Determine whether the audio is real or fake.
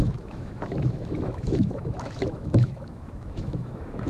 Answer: fake